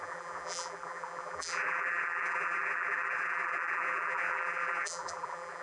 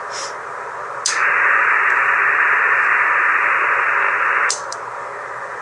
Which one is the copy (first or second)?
first